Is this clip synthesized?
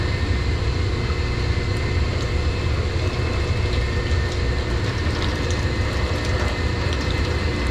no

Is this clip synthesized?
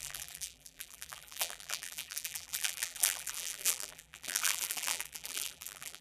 yes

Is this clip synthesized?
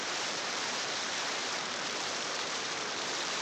yes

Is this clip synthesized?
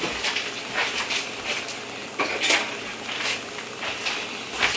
yes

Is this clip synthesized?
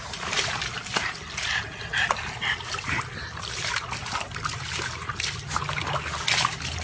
no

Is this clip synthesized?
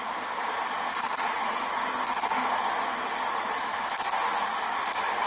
no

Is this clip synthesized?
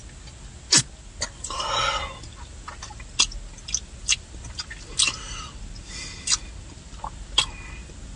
no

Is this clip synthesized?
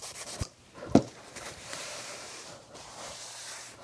yes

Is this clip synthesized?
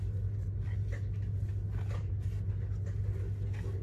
no